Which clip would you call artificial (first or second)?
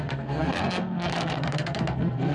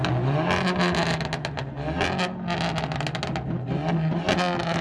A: first